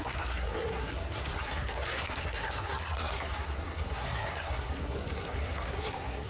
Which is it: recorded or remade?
remade